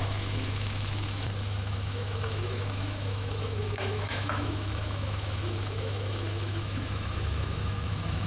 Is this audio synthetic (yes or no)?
yes